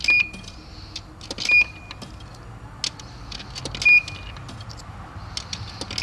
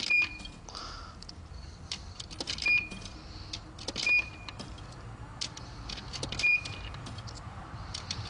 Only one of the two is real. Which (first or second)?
first